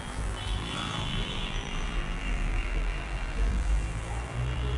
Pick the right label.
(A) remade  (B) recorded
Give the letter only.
A